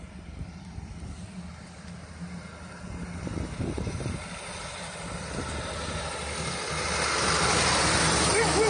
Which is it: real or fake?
real